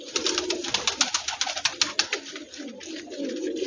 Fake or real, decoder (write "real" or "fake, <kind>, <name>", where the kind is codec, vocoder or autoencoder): real